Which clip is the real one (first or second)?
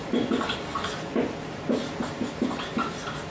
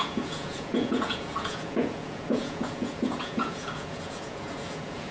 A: first